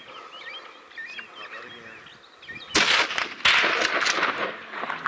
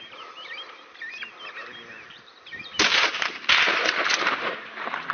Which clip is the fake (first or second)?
second